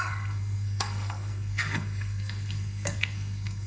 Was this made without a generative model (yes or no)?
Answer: no